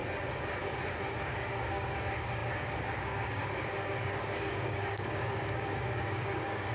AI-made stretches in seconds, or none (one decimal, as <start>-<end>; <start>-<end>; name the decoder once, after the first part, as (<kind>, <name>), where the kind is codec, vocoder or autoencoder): 1.2-6.7 (codec, DAC)